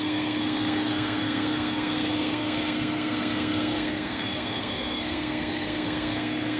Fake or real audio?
fake